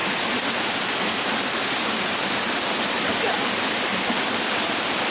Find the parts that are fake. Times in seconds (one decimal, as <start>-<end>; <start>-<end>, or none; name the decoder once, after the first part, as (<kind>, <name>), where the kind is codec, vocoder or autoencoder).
0.0-1.5 (vocoder, BigVGAN v2)

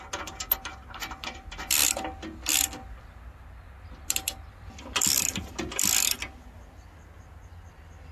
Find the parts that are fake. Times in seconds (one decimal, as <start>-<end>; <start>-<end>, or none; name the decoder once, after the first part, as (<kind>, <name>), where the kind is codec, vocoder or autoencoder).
none

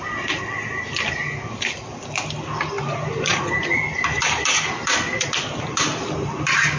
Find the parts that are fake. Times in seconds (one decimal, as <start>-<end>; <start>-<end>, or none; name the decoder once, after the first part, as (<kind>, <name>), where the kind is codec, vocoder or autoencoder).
3.0-3.6 (vocoder, BigVGAN v2)

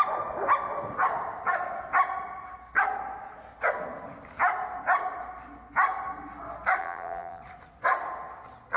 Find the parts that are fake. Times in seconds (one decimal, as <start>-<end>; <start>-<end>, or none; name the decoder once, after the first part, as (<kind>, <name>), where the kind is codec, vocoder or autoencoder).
6.8-7.4 (vocoder, BigVGAN v2)

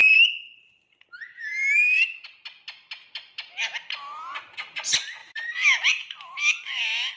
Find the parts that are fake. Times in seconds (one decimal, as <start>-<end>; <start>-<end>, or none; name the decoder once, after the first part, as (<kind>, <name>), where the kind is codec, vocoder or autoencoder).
0.0-2.4 (vocoder, BigVGAN v2); 5.2-6.8

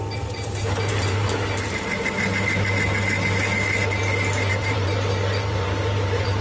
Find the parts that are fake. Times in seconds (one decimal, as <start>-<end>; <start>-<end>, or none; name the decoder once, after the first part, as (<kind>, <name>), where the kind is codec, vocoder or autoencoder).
0.0-1.2 (vocoder, BigVGAN v2); 4.5-6.4

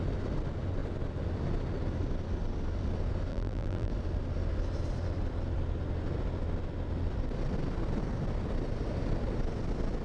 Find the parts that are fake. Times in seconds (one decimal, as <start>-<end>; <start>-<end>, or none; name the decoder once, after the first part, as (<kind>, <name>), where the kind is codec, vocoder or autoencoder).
3.3-3.9 (vocoder, BigVGAN v2)